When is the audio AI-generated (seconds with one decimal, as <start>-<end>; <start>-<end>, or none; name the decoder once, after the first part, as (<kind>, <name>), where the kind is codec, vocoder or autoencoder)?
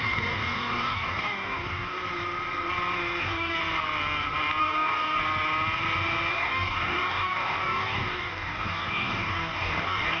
0.0-2.0 (codec, DAC); 3.2-3.6; 4.6-5.2; 6.3-10.2